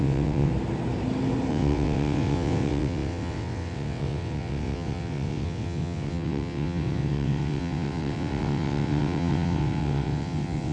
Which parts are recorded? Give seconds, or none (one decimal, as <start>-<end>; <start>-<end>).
0.5-1.5

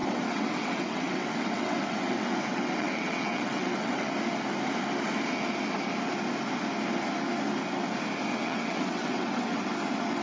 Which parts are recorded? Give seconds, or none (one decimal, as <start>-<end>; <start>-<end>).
4.1-8.3; 9.7-10.2

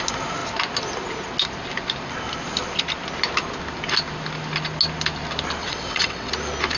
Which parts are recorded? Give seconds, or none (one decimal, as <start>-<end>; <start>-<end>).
0.0-5.6; 6.3-6.8

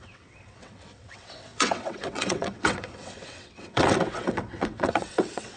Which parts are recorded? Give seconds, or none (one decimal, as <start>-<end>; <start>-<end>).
none

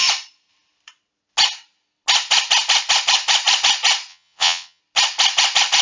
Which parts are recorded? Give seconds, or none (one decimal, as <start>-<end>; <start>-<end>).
0.0-4.1; 4.8-5.8

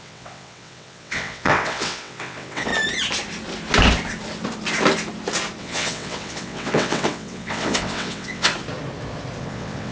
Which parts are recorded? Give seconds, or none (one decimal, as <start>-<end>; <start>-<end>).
2.7-5.6; 8.5-9.4

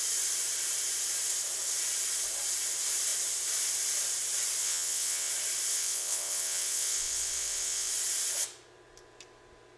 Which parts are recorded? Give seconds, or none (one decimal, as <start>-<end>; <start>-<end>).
0.0-4.6; 5.3-5.7; 7.9-9.8

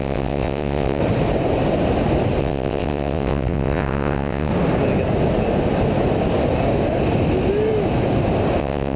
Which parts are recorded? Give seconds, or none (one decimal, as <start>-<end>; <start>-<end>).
1.0-2.4; 4.5-8.6